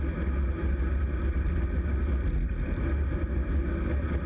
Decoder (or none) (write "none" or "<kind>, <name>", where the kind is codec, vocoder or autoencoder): none